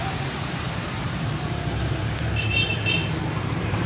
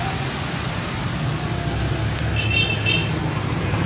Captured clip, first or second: second